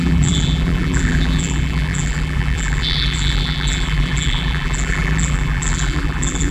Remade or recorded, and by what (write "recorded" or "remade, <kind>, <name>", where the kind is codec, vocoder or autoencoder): remade, vocoder, BigVGAN v2